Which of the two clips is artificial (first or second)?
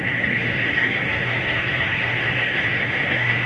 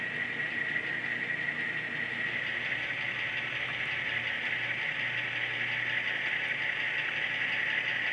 first